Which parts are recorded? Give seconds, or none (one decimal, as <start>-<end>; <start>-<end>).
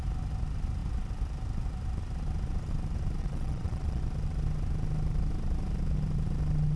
0.0-3.2; 4.0-6.8